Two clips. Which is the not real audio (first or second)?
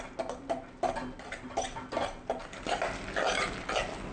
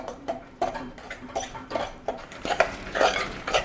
second